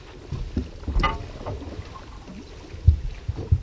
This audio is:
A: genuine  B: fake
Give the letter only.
A